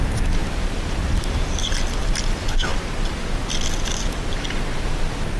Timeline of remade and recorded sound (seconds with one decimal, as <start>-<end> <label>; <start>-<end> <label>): 0.0-5.4 recorded